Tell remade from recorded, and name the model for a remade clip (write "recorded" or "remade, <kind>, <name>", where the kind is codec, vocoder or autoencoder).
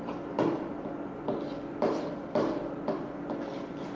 recorded